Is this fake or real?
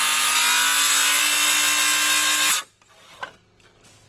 real